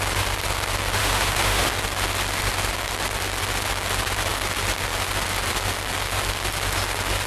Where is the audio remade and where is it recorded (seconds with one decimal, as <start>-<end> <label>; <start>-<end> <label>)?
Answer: 0.0-1.0 recorded; 1.0-1.7 remade; 1.7-7.3 recorded